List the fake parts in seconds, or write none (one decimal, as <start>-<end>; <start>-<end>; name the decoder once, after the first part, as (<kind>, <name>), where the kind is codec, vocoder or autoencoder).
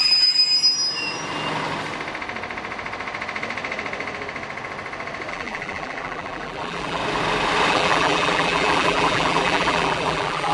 0.0-0.4 (vocoder, BigVGAN v2); 5.3-7.0; 7.7-10.5